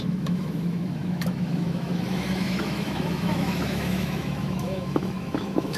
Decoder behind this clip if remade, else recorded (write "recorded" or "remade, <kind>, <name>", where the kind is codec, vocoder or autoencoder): remade, autoencoder, DAC-VAE